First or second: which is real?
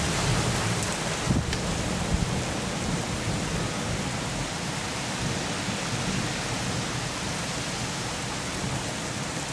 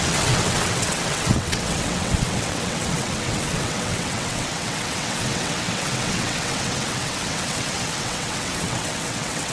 first